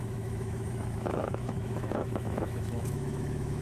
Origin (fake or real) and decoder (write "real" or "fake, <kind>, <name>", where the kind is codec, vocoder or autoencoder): fake, autoencoder, DAC-VAE